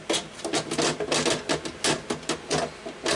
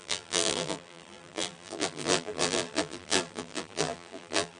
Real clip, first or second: first